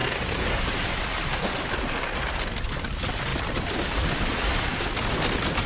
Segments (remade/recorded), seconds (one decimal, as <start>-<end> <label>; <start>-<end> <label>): 0.0-1.1 remade; 1.1-5.7 recorded